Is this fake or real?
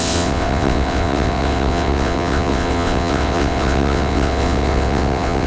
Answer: fake